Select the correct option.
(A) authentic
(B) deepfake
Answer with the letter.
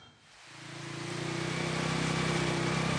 A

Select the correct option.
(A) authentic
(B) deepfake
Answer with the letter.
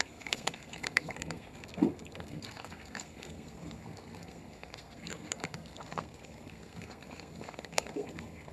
B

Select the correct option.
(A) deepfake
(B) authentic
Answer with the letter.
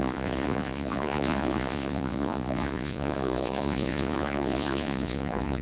A